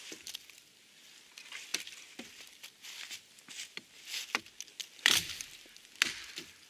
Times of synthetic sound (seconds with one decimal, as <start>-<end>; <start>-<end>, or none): none